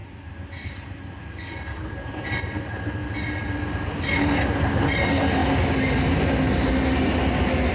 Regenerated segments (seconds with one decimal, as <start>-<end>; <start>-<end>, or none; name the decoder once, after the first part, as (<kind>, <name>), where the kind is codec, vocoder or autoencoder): none